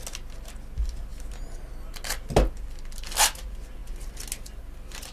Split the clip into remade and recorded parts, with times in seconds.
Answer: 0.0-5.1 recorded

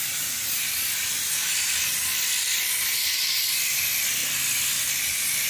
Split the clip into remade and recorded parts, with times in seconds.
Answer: 0.0-5.5 recorded

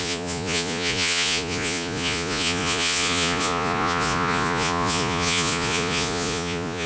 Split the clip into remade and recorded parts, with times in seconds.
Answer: 0.0-6.9 remade

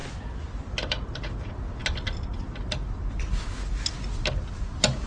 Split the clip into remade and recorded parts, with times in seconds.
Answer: 0.0-5.1 recorded

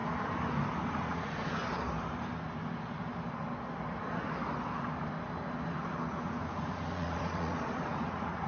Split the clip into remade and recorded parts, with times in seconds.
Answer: 0.0-0.9 recorded; 0.9-1.6 remade; 1.6-6.1 recorded; 6.1-8.5 remade

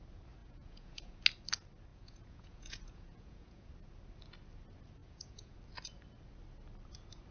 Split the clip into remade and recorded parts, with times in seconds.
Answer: 0.0-0.4 recorded; 0.4-1.2 remade; 1.2-1.9 recorded; 1.9-3.7 remade; 3.7-5.0 recorded; 5.0-5.6 remade; 5.6-7.3 recorded

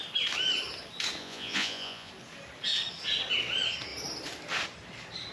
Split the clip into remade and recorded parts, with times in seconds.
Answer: 0.0-1.2 recorded; 1.2-2.1 remade; 2.1-5.3 recorded